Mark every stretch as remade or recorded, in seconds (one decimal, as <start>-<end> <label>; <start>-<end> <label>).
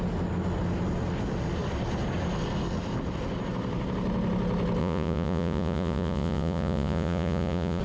0.0-4.8 recorded; 4.8-7.8 remade